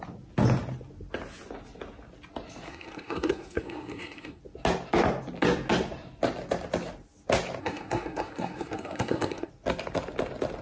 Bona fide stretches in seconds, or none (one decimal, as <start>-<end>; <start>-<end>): 0.0-2.7; 4.4-7.6; 9.5-10.6